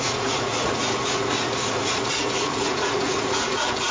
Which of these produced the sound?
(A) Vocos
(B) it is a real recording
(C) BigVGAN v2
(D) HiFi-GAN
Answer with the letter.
A